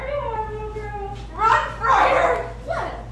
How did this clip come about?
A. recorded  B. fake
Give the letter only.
A